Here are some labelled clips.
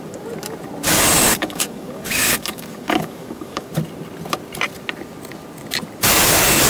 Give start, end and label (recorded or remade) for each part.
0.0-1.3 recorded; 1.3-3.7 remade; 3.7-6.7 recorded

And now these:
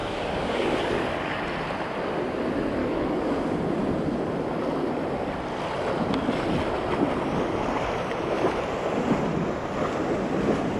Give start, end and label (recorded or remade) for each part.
0.0-1.4 remade; 1.4-2.8 recorded; 2.8-3.3 remade; 3.3-10.8 recorded

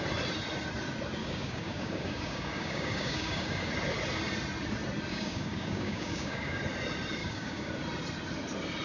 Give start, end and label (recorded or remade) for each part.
0.0-1.2 recorded; 1.2-3.7 remade; 3.7-5.1 recorded; 5.1-6.6 remade; 6.6-7.2 recorded; 7.2-7.7 remade; 7.7-8.8 recorded

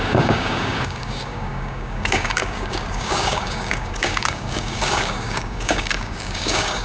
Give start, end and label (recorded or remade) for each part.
0.0-6.8 remade

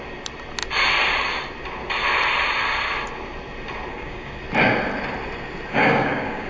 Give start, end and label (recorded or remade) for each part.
0.0-3.9 recorded; 3.9-4.4 remade; 4.4-5.7 recorded; 5.7-6.5 remade

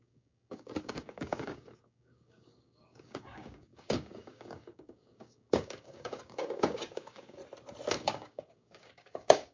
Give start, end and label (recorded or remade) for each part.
0.0-7.4 remade; 7.4-7.9 recorded; 7.9-9.5 remade

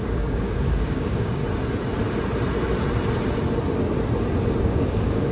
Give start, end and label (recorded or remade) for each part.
0.0-1.4 remade; 1.4-4.6 recorded; 4.6-5.3 remade

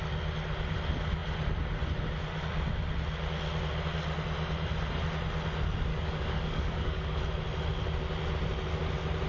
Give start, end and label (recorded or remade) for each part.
0.0-5.9 recorded; 5.9-7.2 remade; 7.2-9.3 recorded